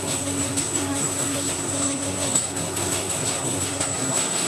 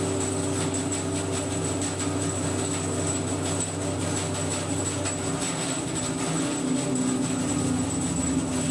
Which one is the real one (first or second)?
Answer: second